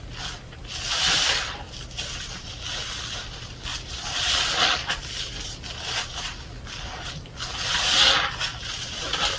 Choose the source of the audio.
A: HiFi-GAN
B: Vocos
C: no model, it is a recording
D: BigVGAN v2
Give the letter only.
D